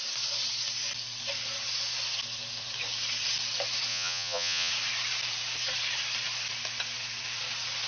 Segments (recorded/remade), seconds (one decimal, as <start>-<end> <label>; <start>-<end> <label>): 0.0-3.9 recorded; 3.9-4.7 remade; 4.7-7.9 recorded